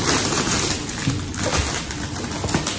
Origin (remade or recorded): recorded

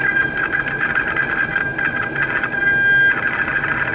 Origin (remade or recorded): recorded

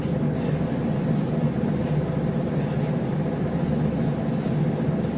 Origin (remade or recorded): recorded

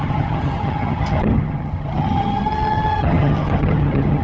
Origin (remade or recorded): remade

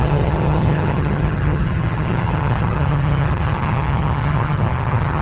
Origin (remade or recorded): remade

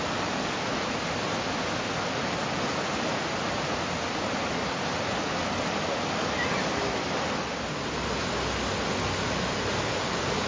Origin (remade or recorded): recorded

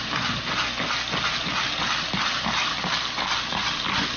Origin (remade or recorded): recorded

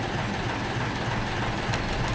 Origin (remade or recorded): recorded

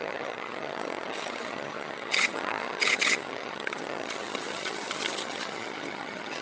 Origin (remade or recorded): remade